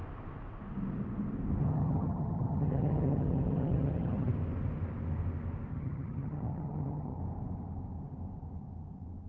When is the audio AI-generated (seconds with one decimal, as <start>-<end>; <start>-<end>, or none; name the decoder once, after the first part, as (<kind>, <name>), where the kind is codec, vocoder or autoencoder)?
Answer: 1.6-4.3 (vocoder, HiFi-GAN); 5.7-7.2